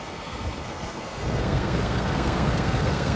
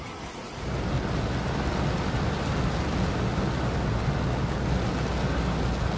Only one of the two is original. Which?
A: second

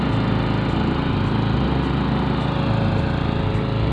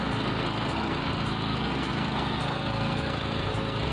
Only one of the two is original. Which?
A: first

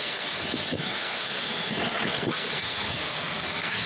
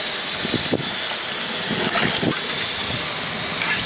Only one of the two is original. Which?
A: second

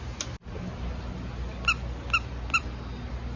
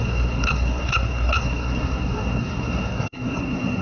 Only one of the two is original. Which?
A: first